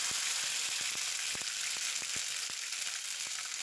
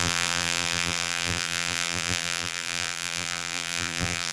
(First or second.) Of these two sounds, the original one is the first